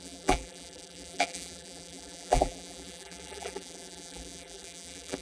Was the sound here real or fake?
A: fake